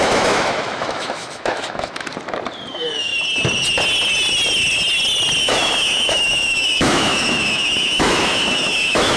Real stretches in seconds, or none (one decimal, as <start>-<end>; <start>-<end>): 2.1-2.7; 3.1-5.4